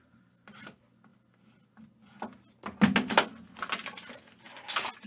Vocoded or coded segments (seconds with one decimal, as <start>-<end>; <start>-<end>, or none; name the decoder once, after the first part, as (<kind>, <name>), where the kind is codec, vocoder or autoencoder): none